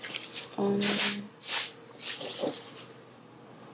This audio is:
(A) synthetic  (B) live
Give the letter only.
B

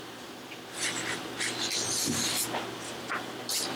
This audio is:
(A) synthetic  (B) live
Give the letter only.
B